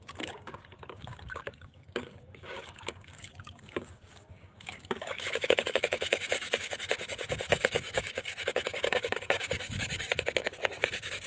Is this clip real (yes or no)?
no